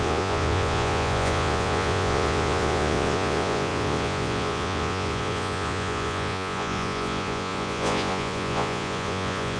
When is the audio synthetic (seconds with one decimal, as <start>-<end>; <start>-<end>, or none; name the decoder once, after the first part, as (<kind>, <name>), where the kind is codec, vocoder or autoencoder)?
0.0-9.6 (vocoder, Vocos)